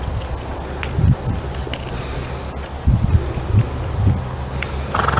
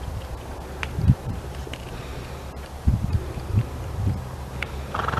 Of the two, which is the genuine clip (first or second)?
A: first